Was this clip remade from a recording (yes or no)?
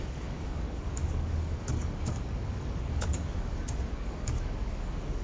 yes